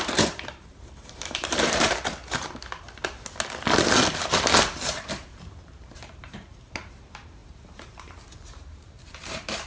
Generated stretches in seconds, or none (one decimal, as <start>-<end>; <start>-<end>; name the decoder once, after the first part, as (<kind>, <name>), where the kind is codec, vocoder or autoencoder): 0.0-2.2 (vocoder, BigVGAN v2); 4.7-9.7